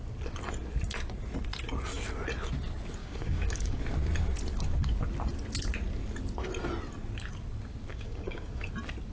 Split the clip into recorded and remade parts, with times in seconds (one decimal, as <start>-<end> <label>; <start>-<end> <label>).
0.0-3.0 recorded; 3.0-3.8 remade; 3.8-7.9 recorded; 7.9-8.7 remade; 8.7-9.1 recorded